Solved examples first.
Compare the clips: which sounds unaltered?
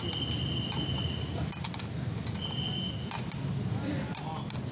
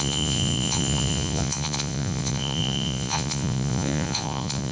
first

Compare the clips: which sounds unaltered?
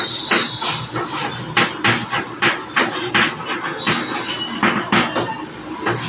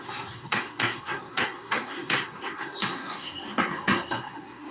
first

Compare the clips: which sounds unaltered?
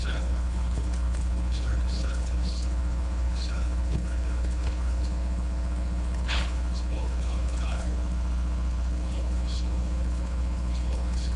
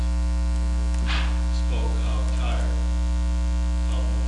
second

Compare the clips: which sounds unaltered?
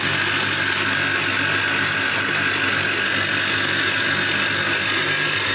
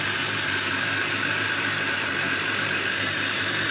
first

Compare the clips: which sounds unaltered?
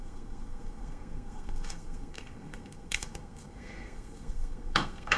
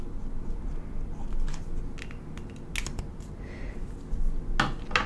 second